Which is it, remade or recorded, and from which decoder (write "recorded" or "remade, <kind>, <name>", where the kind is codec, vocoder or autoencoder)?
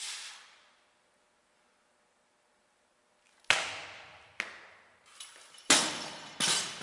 recorded